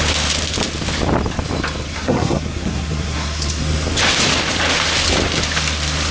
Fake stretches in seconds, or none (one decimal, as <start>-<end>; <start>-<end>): 1.9-3.6